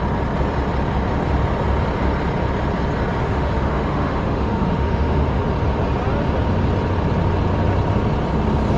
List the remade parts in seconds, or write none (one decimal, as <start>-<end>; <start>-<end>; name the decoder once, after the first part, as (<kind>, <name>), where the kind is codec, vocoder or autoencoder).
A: 3.2-5.4 (autoencoder, DAC-VAE)